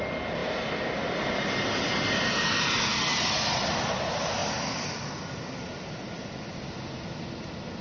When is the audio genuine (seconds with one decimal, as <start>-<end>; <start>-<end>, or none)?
0.0-7.8